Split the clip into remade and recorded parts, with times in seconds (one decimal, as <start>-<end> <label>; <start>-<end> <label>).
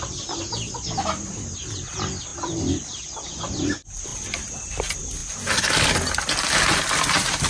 0.0-4.1 recorded; 4.1-4.8 remade; 4.8-7.5 recorded